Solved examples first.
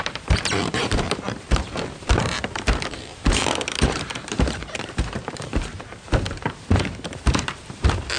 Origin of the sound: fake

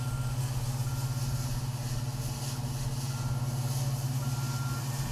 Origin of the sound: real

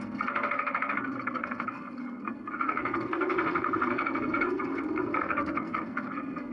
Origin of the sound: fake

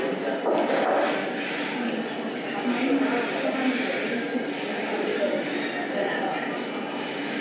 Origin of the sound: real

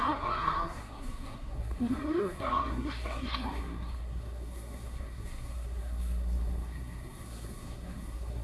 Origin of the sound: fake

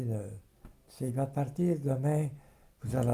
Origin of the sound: real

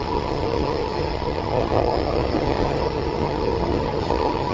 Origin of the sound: fake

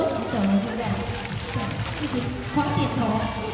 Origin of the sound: real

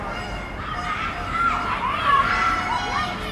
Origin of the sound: fake